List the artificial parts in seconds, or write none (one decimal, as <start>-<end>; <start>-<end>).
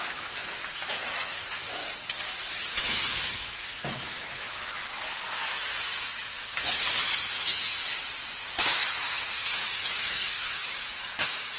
0.0-1.8; 2.6-4.8; 5.3-7.8; 8.4-11.6